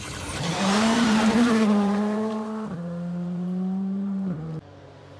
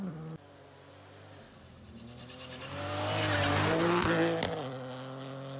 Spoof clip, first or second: first